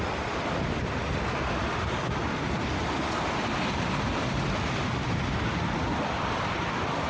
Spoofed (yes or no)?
yes